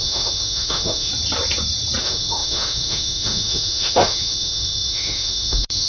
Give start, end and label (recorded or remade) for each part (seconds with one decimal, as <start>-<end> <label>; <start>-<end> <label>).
0.0-1.1 remade; 1.1-2.0 recorded; 2.0-5.9 remade